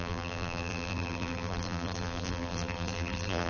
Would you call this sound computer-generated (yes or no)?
yes